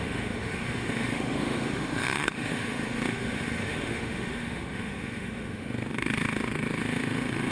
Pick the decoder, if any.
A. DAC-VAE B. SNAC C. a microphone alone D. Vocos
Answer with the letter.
A